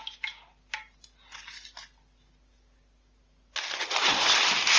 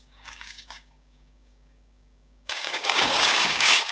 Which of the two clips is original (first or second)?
first